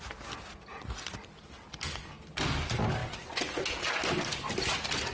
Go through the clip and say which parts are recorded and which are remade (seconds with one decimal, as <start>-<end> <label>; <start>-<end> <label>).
0.0-5.1 recorded

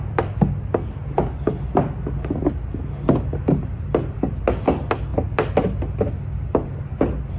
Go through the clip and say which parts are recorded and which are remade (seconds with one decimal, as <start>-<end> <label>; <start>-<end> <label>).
0.0-7.4 recorded

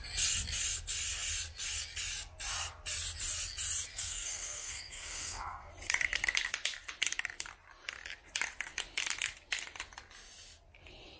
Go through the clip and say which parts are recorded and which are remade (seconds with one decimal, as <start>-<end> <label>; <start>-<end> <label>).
0.0-3.9 recorded; 3.9-5.7 remade; 5.7-11.2 recorded

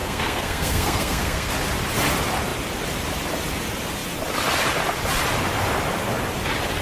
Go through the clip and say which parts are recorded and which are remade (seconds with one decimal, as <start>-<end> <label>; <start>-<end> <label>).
0.0-1.5 remade; 1.5-6.8 recorded

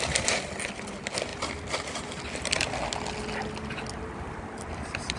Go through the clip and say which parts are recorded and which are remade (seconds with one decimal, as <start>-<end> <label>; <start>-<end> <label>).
0.0-5.2 recorded